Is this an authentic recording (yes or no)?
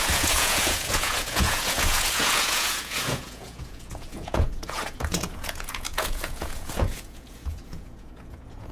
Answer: no